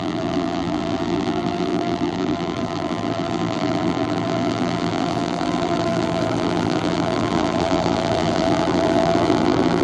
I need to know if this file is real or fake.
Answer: fake